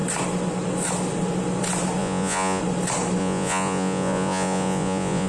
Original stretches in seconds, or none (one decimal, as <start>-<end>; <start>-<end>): 0.0-2.0; 2.6-3.2